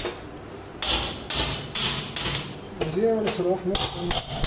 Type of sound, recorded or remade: recorded